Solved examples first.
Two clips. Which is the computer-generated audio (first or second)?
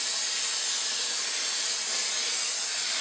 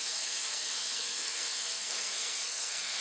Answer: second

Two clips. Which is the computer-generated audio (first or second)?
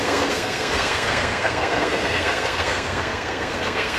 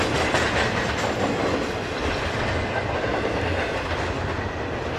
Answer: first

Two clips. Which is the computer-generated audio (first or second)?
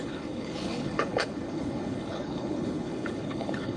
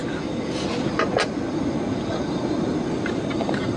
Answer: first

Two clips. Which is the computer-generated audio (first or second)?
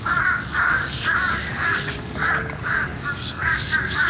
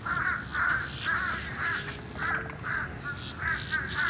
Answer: first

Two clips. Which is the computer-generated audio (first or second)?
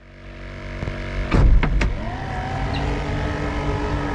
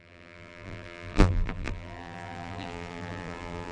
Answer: second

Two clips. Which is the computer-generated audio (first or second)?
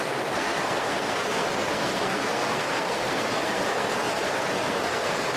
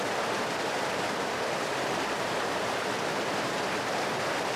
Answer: first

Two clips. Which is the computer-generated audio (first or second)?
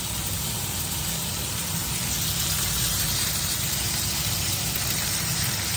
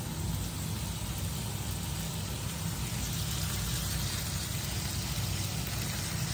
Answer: first